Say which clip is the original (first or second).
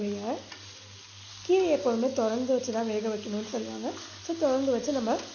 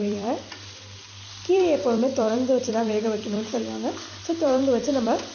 first